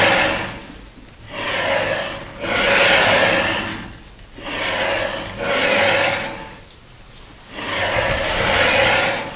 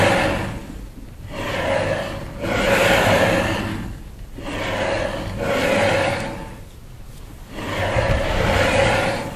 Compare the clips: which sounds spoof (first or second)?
second